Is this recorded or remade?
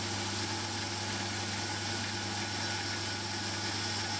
recorded